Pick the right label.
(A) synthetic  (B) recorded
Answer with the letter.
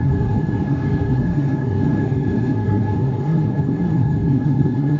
A